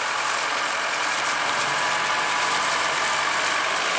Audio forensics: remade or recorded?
remade